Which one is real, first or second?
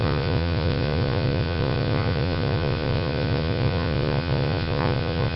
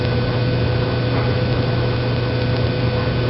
second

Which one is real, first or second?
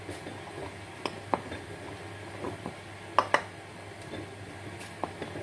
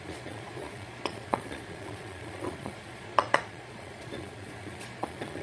first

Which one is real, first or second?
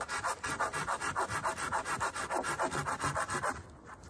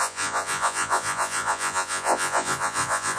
first